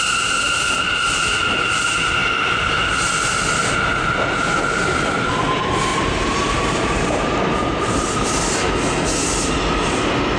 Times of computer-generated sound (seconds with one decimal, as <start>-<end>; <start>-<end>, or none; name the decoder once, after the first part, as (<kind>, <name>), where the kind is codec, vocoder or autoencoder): 5.9-8.3 (vocoder, BigVGAN v2)